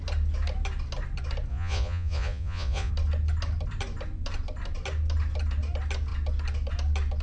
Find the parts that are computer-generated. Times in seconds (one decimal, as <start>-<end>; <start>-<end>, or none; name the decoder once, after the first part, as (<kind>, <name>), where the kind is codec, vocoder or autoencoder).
1.5-2.9 (vocoder, Vocos)